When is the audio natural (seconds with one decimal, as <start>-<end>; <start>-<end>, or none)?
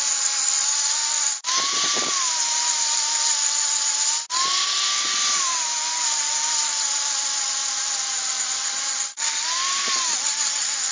0.0-10.9